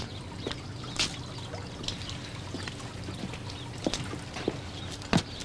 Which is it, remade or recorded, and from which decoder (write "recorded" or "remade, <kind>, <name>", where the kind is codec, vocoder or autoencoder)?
recorded